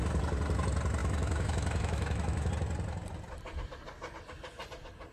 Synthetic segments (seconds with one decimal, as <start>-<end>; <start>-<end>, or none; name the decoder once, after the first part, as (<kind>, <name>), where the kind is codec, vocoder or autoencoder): 1.0-2.5 (autoencoder, DAC-VAE)